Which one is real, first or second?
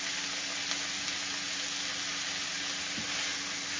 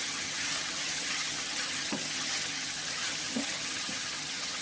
first